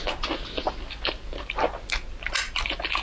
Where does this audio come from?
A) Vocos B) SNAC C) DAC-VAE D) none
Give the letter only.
D